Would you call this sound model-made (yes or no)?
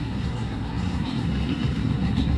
yes